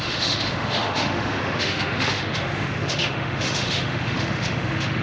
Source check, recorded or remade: remade